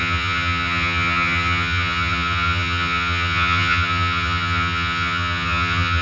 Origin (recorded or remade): remade